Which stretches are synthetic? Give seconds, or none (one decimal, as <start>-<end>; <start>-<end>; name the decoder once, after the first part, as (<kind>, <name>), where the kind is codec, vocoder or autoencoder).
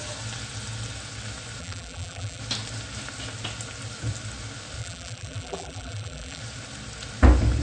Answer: 1.6-2.4 (vocoder, BigVGAN v2); 4.8-6.4